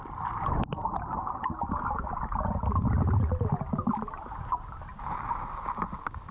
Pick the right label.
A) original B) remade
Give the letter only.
A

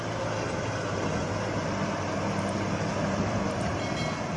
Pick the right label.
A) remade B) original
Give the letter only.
B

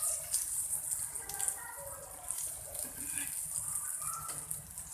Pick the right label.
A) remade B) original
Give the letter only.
B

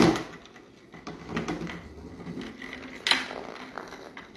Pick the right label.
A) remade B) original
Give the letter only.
B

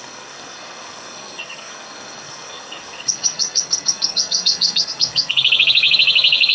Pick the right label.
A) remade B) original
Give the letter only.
A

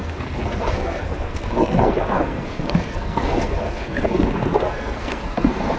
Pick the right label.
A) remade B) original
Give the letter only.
A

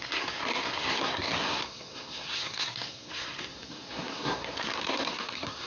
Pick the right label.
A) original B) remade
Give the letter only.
B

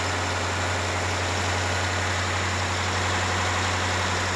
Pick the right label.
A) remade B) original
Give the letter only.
B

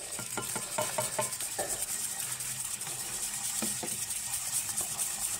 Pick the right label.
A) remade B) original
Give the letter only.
A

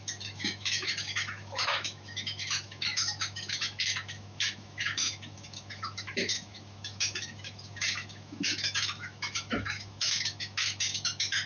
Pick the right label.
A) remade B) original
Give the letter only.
A